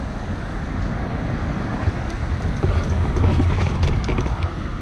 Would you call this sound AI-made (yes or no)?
yes